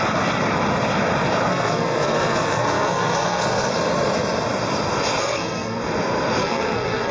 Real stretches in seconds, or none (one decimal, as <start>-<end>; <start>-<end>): 0.0-1.5; 3.7-5.2; 5.8-6.4